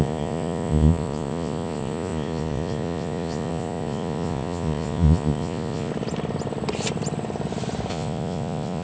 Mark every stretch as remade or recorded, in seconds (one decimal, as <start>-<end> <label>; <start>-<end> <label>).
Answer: 0.0-5.9 remade; 5.9-7.9 recorded; 7.9-8.8 remade